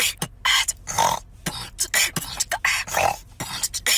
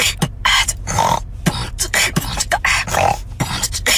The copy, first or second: second